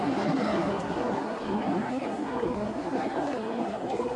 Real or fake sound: fake